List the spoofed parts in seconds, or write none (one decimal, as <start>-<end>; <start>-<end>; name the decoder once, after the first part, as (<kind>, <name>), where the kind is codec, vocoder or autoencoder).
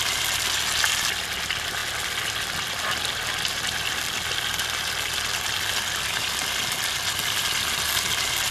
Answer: none